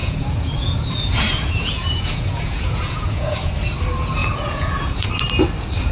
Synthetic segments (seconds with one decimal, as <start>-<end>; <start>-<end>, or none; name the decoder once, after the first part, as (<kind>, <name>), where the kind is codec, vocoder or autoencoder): 0.0-3.5 (vocoder, Vocos); 4.2-5.1